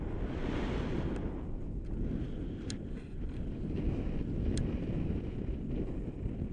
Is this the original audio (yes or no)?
yes